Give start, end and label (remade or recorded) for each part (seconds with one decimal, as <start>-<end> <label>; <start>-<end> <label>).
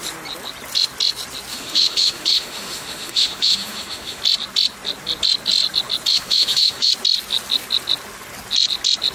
0.0-1.5 recorded; 1.5-4.2 remade; 4.2-6.1 recorded; 6.1-6.9 remade; 6.9-9.1 recorded